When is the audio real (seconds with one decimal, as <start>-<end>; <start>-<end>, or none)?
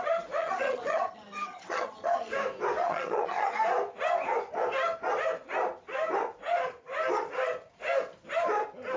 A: 0.0-0.4; 2.3-2.8; 3.5-9.0